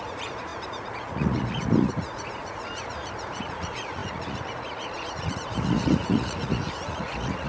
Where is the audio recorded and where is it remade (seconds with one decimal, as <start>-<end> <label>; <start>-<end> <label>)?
0.0-7.5 remade